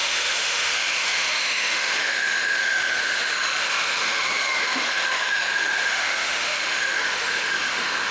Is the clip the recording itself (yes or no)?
no